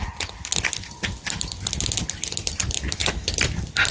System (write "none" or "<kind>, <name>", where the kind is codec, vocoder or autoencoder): none